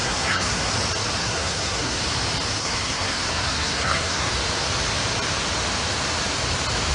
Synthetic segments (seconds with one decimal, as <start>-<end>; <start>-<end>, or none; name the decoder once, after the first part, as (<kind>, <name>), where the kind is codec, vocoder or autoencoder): 0.0-0.7 (codec, SNAC); 1.2-2.0; 2.6-4.3